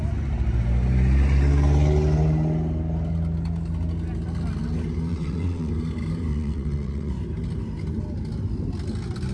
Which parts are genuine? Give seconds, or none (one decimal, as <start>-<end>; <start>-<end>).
0.0-5.1; 5.7-6.3; 7.1-9.3

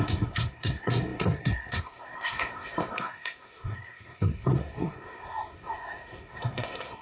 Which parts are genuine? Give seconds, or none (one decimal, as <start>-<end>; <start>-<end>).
none